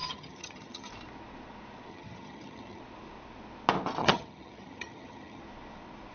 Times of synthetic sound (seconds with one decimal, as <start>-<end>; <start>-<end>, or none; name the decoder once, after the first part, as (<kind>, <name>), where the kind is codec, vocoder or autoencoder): 0.0-0.9 (vocoder, HiFi-GAN); 1.9-2.8; 4.0-5.4